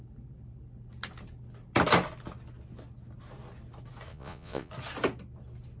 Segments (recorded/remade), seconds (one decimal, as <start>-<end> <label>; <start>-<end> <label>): 0.0-4.1 recorded; 4.1-4.7 remade; 4.7-5.8 recorded